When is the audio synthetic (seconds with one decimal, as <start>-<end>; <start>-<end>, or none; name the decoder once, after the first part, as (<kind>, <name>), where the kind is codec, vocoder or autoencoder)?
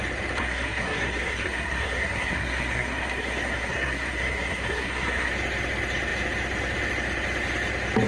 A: 0.4-5.3 (codec, SNAC)